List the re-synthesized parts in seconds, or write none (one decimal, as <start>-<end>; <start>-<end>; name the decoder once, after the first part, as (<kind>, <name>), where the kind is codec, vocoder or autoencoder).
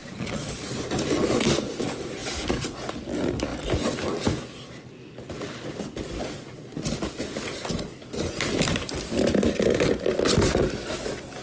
0.0-0.7 (vocoder, Vocos)